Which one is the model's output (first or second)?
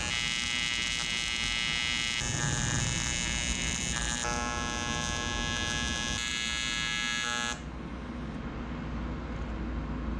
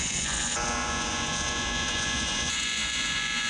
second